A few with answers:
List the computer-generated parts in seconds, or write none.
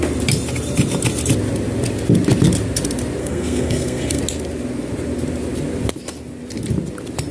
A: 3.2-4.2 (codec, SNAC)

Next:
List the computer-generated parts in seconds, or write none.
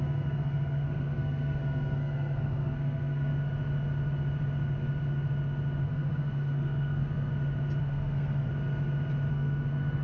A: 0.0-3.3 (codec, SNAC); 5.8-7.3; 7.8-8.5; 9.3-10.0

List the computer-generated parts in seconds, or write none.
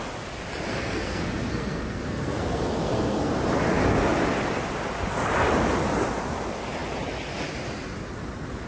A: 0.7-3.3 (codec, SNAC)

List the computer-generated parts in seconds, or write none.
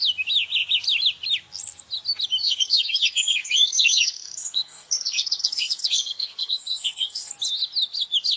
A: 2.4-7.3 (codec, SNAC)